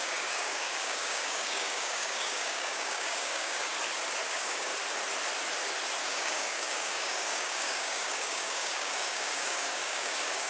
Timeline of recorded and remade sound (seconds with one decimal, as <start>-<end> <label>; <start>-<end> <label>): 0.0-3.7 remade; 3.7-4.3 recorded; 4.3-4.7 remade; 4.7-6.0 recorded; 6.0-10.5 remade